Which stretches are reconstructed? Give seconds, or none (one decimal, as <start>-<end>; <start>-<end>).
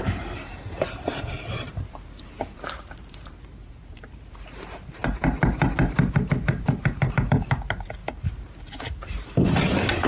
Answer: 0.0-10.1